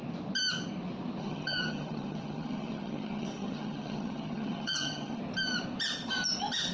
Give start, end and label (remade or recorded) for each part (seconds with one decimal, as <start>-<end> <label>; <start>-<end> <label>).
0.0-1.2 recorded; 1.2-5.2 remade; 5.2-6.7 recorded